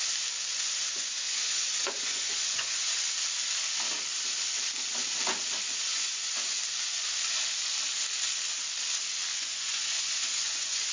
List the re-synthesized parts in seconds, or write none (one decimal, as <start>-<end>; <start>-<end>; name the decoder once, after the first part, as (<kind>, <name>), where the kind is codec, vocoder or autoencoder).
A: 0.5-3.0 (vocoder, Vocos); 5.9-6.6; 9.3-10.9